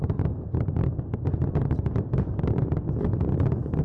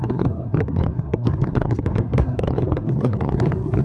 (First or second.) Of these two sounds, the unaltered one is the first